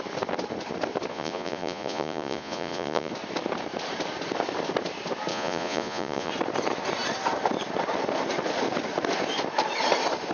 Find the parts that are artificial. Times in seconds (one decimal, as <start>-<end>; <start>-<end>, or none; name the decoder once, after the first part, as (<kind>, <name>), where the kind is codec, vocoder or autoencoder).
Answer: 1.1-3.1 (vocoder, Vocos); 5.3-6.3